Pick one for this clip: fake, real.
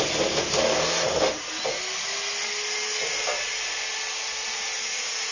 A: real